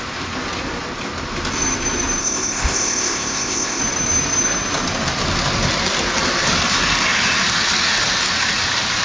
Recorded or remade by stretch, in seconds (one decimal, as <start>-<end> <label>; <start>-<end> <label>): 0.0-2.2 recorded; 2.2-3.8 remade; 3.8-9.0 recorded